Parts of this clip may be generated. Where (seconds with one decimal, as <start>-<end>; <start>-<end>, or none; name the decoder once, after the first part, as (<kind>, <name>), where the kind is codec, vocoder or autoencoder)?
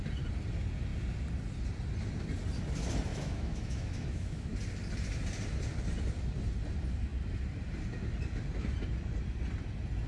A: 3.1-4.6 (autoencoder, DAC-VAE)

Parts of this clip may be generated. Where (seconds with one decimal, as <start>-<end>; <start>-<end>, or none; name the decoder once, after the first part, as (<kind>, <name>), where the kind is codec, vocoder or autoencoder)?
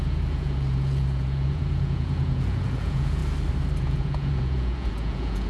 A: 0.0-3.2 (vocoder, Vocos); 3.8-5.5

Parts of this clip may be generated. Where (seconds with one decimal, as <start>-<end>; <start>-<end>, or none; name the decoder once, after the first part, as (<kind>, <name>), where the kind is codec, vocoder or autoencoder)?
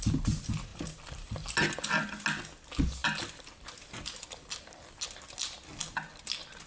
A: none